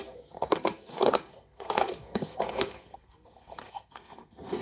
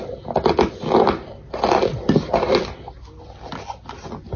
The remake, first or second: first